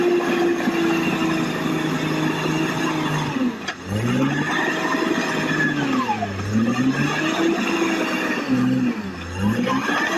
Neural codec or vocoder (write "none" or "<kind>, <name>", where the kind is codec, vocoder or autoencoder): none